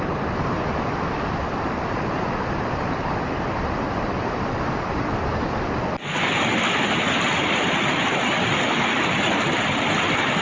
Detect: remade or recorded recorded